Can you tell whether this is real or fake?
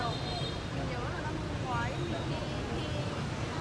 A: real